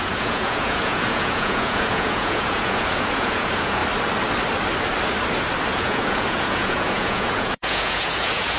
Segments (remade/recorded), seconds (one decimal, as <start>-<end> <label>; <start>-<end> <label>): 0.0-3.8 remade; 3.8-5.7 recorded; 5.7-8.6 remade